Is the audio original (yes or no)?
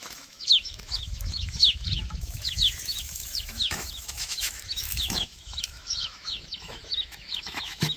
no